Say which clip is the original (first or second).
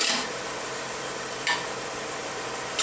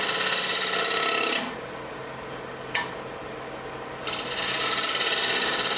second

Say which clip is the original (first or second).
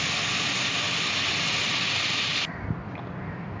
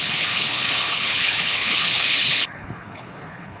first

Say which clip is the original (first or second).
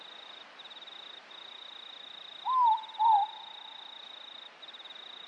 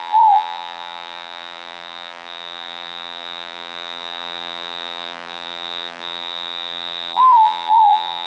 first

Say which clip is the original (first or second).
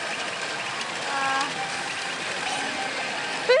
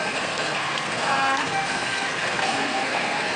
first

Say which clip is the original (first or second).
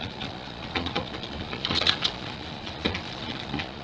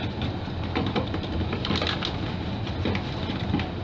second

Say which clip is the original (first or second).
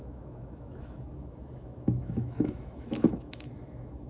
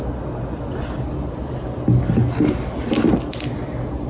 second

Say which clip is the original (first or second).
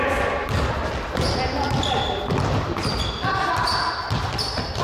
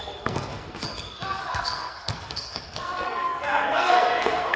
first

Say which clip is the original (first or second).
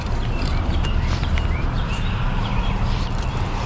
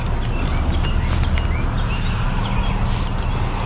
second